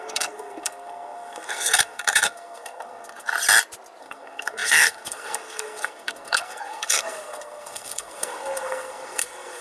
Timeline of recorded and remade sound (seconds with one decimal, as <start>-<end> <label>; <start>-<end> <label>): 0.0-3.3 remade; 3.3-4.0 recorded; 4.0-9.6 remade